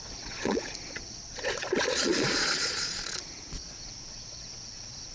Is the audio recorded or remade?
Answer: remade